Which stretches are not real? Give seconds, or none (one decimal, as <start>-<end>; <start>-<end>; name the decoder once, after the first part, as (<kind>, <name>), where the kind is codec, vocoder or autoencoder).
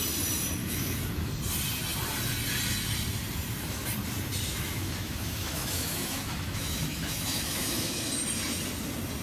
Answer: 0.6-1.3 (autoencoder, DAC-VAE); 4.5-8.1